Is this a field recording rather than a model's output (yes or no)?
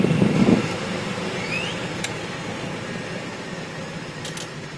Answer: yes